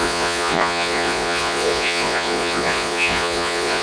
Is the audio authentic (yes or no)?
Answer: no